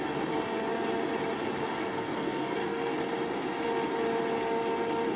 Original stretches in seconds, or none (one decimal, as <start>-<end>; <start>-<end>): 0.0-1.9; 2.9-5.2